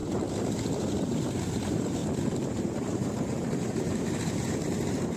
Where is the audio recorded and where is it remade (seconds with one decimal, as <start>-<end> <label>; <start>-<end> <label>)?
0.0-0.8 recorded; 0.8-2.0 remade; 2.0-2.5 recorded; 2.5-5.2 remade